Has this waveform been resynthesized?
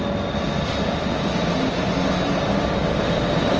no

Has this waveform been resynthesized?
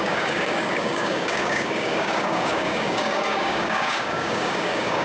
yes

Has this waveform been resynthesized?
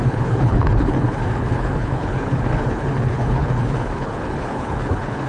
yes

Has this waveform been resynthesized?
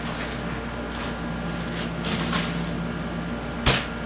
no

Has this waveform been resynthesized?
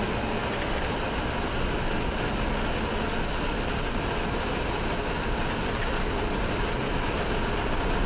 no